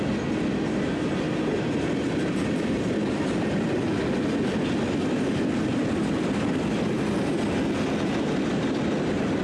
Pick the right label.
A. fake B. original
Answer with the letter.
B